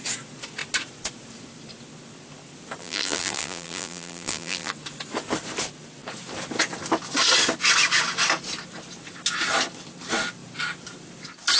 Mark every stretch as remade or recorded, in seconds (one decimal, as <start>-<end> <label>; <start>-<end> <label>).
0.0-2.8 recorded; 2.8-4.7 remade; 4.7-11.6 recorded

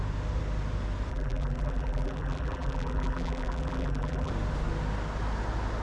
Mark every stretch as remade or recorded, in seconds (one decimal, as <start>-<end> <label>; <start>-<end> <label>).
0.0-1.1 recorded; 1.1-4.3 remade; 4.3-5.8 recorded